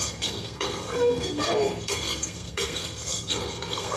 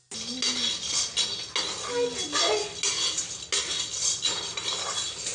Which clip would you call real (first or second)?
second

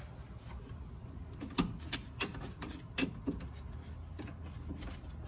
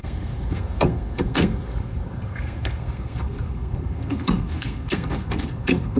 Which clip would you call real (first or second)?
first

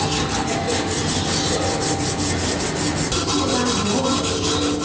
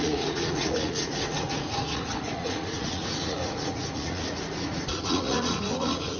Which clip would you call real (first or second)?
first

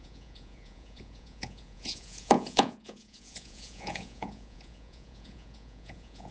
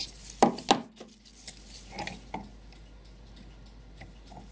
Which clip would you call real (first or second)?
second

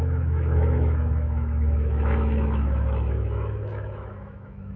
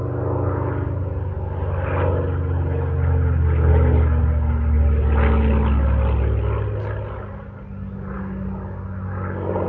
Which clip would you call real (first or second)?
second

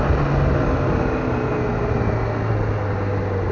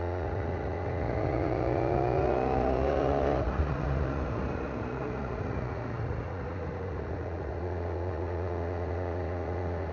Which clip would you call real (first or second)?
first